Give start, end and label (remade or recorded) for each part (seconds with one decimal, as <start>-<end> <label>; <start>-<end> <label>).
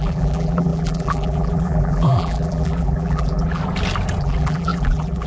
0.0-3.6 remade; 3.6-4.2 recorded; 4.2-5.3 remade